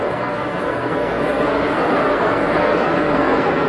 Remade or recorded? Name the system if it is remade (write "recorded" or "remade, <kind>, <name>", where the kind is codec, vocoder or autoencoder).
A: remade, codec, SNAC